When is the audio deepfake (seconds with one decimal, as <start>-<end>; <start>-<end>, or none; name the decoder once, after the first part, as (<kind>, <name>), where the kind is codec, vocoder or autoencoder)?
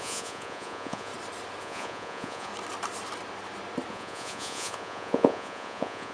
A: 0.0-1.1 (vocoder, Vocos); 1.6-2.5; 3.9-6.1